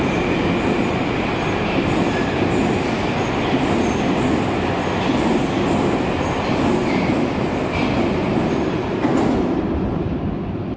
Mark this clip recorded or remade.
recorded